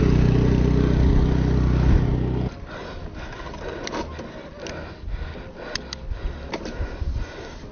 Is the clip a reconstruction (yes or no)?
no